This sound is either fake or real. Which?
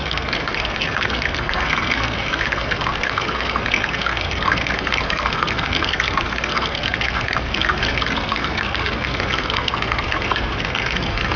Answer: fake